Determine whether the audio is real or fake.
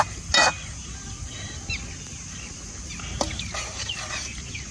real